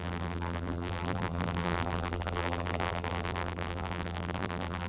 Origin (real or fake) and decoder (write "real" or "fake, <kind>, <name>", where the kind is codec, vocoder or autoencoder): fake, vocoder, BigVGAN v2